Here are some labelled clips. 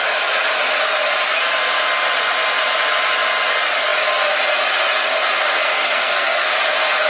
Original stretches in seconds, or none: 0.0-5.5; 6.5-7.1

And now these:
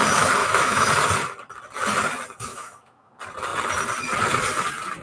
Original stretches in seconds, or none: 0.0-0.4; 0.9-2.5; 3.1-5.0

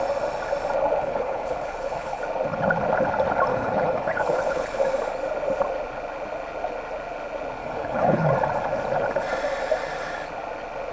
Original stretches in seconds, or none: 0.0-1.0; 2.2-3.5; 4.8-7.6; 8.3-10.9

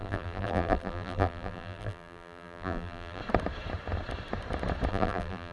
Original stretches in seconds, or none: 3.2-4.9

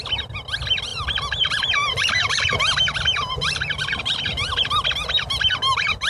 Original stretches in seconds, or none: 0.0-0.9; 4.6-6.1

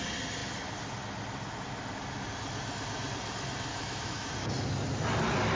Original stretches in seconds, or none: 0.0-3.7; 4.3-5.6

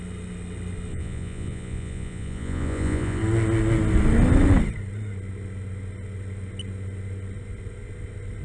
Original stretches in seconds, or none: 0.0-0.9; 3.2-8.4

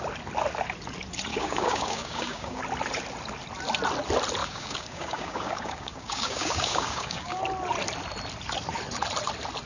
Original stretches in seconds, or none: 0.0-1.3; 2.6-4.4; 7.4-9.7